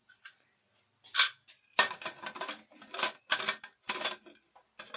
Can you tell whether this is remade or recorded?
recorded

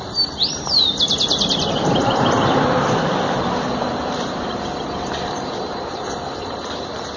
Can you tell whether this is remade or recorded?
remade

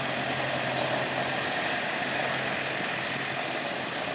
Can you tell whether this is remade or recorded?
recorded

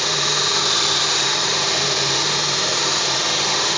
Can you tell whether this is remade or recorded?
remade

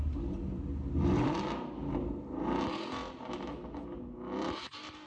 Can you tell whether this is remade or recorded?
recorded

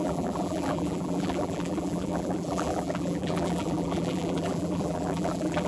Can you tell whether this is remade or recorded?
remade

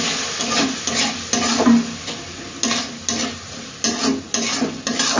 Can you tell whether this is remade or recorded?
recorded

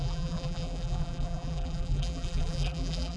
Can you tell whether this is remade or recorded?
remade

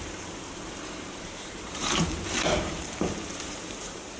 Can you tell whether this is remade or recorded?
remade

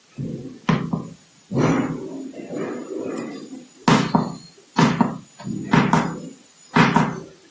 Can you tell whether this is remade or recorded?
recorded